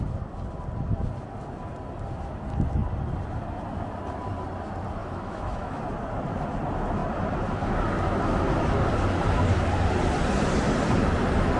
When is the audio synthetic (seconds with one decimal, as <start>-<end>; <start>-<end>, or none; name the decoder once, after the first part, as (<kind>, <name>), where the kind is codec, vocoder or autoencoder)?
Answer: 5.0-5.8 (autoencoder, DAC-VAE)